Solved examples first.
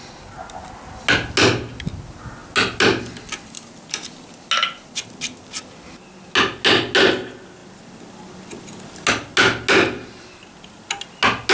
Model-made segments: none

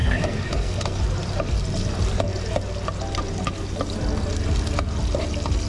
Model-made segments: 0.0-1.0

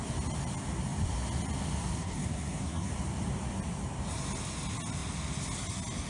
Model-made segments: 2.0-2.9